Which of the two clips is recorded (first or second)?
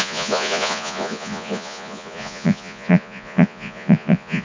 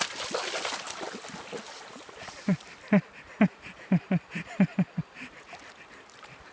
second